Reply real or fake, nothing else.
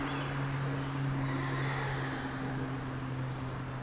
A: real